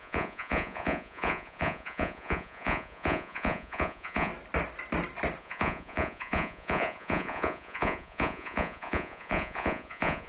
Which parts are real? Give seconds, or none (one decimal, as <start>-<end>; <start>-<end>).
4.3-5.4